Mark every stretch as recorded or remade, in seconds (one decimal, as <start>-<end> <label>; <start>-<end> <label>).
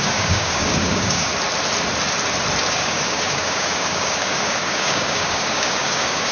0.0-1.3 remade; 1.3-2.7 recorded; 2.7-6.3 remade